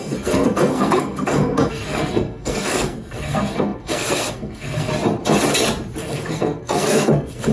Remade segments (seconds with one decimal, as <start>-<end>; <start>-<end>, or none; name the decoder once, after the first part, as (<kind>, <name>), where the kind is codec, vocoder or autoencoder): 0.0-4.9 (codec, SNAC); 6.0-7.5

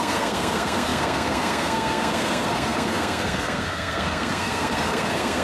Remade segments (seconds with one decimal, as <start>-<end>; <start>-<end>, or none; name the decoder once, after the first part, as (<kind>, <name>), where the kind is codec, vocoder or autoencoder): 0.0-5.4 (codec, SNAC)

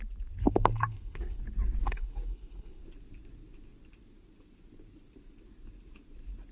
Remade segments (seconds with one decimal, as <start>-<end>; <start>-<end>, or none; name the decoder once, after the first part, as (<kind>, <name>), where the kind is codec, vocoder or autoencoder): 0.4-1.4 (codec, SNAC); 1.8-2.8

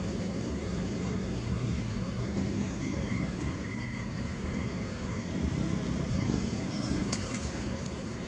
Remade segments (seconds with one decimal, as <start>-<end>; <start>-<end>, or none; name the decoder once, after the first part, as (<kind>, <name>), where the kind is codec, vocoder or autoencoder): 0.0-5.3 (codec, SNAC); 6.1-8.3

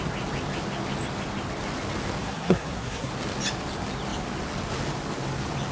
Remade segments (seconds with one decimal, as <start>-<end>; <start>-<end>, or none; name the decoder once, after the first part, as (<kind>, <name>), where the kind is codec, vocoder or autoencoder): 2.2-3.1 (codec, SNAC)

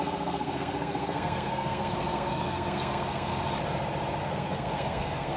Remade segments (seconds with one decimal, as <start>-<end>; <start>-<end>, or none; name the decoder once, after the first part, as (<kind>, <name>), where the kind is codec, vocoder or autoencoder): 0.0-3.3 (codec, SNAC); 4.2-5.4

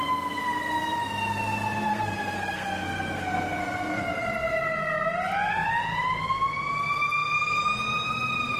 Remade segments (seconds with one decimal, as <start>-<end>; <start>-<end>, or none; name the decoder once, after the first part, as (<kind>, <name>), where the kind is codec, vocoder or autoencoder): 1.9-4.0 (codec, SNAC)